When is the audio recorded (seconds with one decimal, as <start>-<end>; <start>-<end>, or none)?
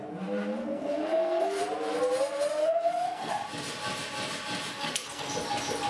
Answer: 0.0-0.6; 1.6-2.6; 3.3-4.7; 5.3-5.9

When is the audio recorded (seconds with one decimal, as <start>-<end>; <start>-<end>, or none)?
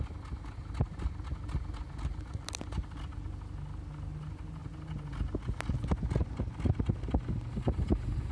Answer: 0.0-8.3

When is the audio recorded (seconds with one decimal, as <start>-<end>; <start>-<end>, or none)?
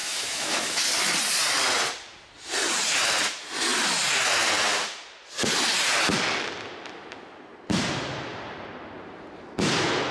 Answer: 0.8-10.1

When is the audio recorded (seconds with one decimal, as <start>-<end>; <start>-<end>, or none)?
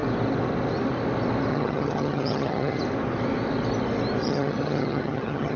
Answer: 0.0-1.5; 2.8-4.2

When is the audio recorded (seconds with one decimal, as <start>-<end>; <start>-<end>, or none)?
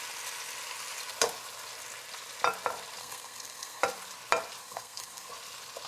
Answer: 0.0-3.0; 3.8-4.6; 5.3-5.9